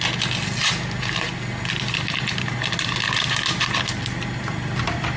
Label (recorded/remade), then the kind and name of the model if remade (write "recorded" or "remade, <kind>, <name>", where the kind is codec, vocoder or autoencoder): recorded